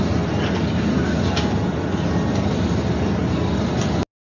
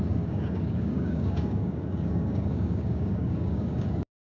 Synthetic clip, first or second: second